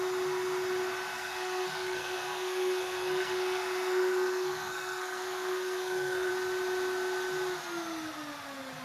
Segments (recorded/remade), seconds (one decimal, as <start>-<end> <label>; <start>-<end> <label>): 0.0-1.1 recorded; 1.1-6.3 remade; 6.3-8.8 recorded